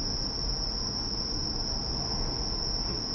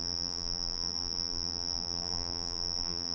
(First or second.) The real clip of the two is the first